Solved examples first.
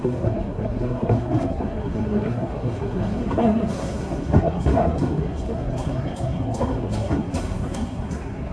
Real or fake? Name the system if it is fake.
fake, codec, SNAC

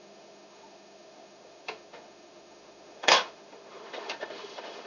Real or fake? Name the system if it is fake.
fake, autoencoder, DAC-VAE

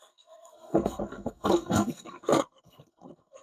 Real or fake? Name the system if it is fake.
fake, codec, SNAC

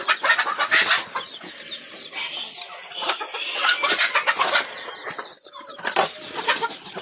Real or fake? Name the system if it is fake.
real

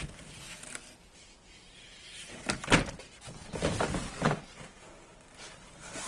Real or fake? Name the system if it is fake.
real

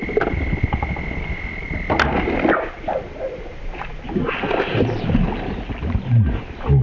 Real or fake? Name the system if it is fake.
real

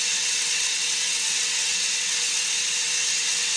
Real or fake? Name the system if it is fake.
fake, vocoder, WaveNeXt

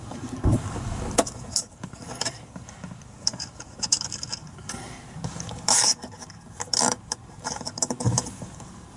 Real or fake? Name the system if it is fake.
fake, codec, DAC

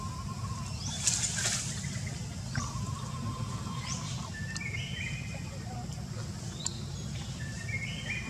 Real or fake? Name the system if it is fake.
real